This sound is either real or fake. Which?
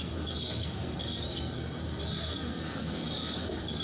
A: fake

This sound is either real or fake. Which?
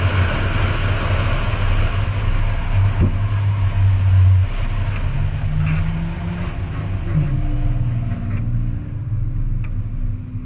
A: real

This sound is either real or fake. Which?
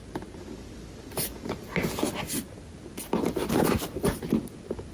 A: real